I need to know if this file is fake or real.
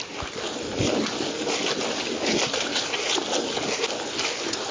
real